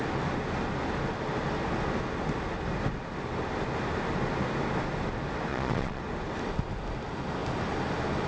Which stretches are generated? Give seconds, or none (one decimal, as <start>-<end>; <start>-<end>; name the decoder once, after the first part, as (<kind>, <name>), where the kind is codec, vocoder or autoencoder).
5.5-6.0 (vocoder, Vocos)